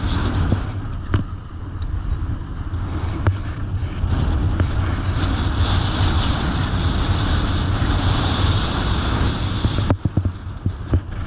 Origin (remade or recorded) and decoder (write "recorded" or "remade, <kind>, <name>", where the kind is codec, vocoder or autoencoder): recorded